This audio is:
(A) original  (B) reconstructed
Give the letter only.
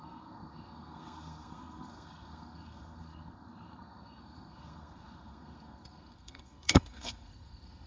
B